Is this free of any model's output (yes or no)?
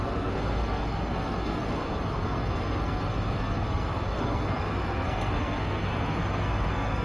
no